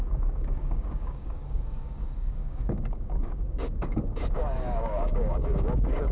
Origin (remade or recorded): remade